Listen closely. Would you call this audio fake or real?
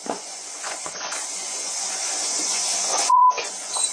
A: fake